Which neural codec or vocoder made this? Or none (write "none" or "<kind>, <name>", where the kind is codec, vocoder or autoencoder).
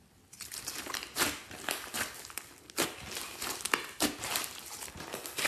none